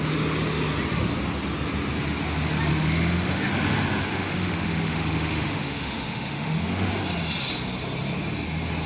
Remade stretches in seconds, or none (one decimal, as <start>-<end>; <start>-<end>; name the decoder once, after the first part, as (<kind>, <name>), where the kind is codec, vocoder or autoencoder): 2.7-3.5 (autoencoder, DAC-VAE); 4.1-6.9